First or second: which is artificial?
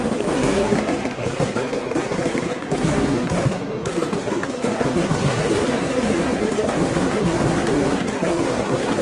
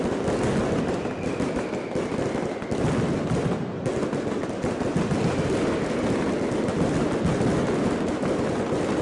first